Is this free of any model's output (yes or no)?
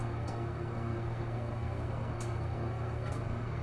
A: no